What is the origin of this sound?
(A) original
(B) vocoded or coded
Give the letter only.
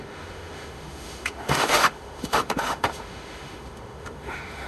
B